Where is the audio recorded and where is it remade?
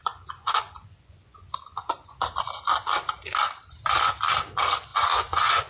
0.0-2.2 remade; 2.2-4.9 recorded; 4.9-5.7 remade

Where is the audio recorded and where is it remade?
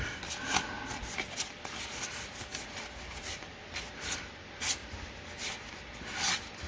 0.0-6.7 recorded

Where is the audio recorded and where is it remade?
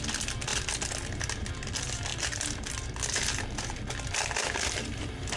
0.0-5.4 recorded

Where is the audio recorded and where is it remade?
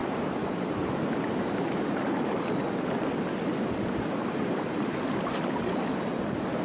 0.0-2.0 remade; 2.0-4.2 recorded; 4.2-5.0 remade; 5.0-6.6 recorded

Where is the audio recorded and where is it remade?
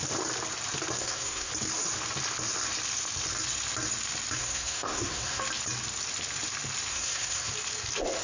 0.0-1.0 recorded; 1.0-1.5 remade; 1.5-4.4 recorded; 4.4-5.4 remade; 5.4-6.9 recorded; 6.9-7.5 remade; 7.5-8.2 recorded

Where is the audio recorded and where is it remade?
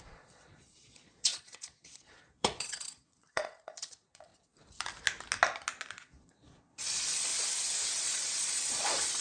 0.0-4.3 remade; 4.3-5.9 recorded; 5.9-7.3 remade; 7.3-8.0 recorded; 8.0-9.2 remade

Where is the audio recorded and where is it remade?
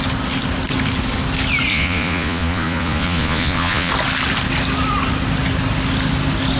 0.0-1.7 recorded; 1.7-3.9 remade; 3.9-6.6 recorded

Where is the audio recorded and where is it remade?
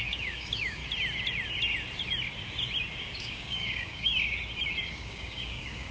0.0-0.8 remade; 0.8-3.0 recorded; 3.0-4.1 remade; 4.1-4.9 recorded; 4.9-5.9 remade